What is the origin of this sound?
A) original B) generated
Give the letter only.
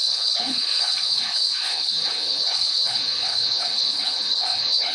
B